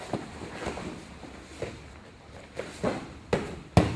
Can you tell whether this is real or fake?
real